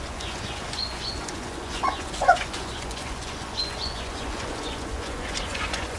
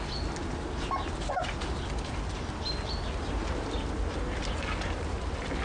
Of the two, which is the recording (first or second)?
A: second